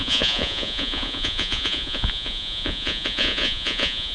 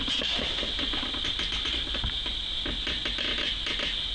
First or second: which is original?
second